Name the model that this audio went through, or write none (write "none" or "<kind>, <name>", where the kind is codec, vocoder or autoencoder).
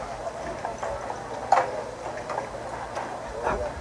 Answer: none